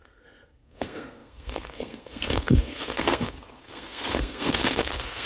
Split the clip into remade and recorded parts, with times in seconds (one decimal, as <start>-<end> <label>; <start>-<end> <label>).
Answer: 0.0-5.3 remade

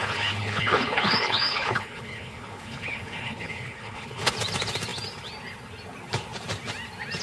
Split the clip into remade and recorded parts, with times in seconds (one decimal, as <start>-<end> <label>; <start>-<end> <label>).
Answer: 0.0-4.3 remade; 4.3-7.2 recorded

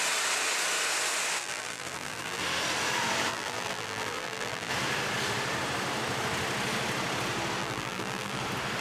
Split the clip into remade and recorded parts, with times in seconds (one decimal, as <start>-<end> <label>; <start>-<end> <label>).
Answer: 0.0-1.4 recorded; 1.4-2.4 remade; 2.4-3.3 recorded; 3.3-4.7 remade; 4.7-7.6 recorded; 7.6-8.4 remade; 8.4-8.8 recorded

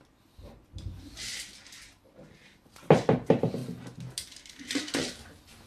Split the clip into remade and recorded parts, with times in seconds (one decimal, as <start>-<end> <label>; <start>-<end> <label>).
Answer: 0.0-5.7 recorded